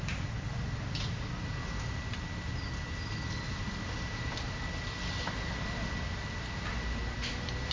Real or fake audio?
real